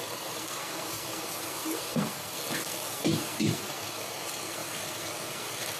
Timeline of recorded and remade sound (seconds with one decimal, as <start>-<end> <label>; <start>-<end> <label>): 0.0-5.8 remade